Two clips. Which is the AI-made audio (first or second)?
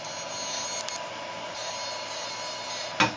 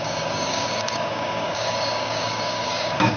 second